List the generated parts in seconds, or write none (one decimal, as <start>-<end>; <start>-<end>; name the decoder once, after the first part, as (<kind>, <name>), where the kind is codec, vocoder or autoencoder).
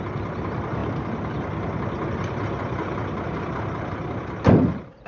none